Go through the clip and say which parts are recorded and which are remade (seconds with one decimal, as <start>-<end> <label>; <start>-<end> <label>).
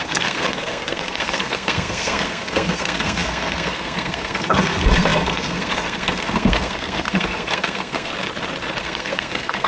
0.0-8.1 remade; 8.1-8.8 recorded; 8.8-9.7 remade